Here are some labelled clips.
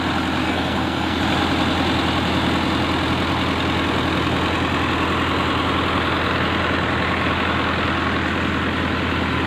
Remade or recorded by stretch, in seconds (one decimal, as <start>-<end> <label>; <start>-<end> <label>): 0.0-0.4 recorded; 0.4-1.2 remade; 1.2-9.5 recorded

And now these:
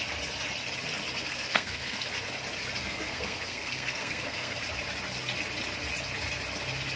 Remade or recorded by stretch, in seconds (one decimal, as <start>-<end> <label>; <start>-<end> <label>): 0.0-1.2 recorded; 1.2-2.1 remade; 2.1-2.8 recorded; 2.8-4.6 remade; 4.6-7.0 recorded

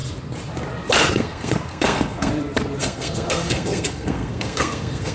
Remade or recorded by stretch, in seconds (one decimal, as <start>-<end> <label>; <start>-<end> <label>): 0.0-1.1 recorded; 1.1-2.3 remade; 2.3-2.8 recorded; 2.8-5.1 remade